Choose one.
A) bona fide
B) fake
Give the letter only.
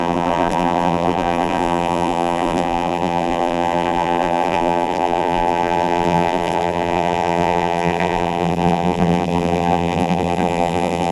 B